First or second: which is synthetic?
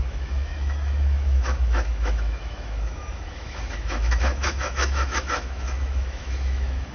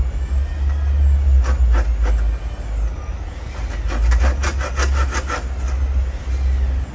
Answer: first